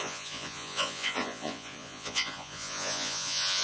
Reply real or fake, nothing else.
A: fake